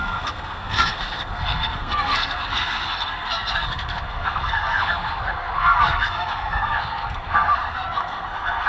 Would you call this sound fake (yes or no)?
yes